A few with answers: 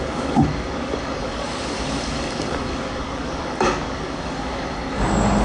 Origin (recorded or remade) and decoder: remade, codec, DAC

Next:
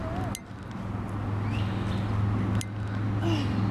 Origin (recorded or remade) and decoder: recorded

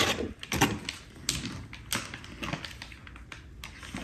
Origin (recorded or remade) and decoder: recorded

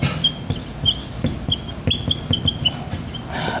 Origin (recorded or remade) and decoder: recorded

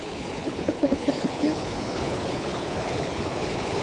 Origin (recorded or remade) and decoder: remade, codec, HILCodec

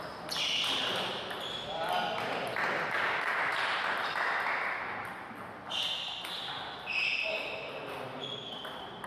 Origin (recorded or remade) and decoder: recorded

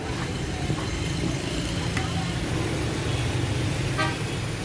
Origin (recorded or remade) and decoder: recorded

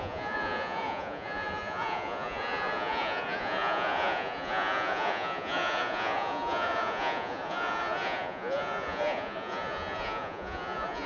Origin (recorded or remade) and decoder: remade, vocoder, Vocos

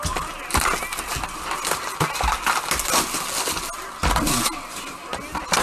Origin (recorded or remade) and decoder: recorded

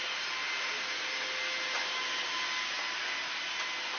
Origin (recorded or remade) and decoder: recorded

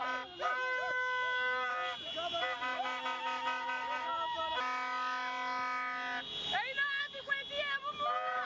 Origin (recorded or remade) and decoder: recorded